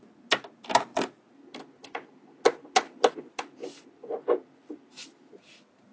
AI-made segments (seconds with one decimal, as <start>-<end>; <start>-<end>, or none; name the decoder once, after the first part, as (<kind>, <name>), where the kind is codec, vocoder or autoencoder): none